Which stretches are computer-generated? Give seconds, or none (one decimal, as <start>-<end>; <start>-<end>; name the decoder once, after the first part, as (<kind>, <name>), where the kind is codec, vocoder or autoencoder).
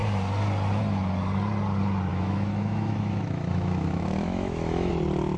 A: 2.1-4.9 (autoencoder, DAC-VAE)